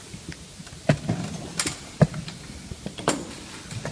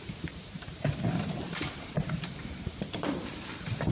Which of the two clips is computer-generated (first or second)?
second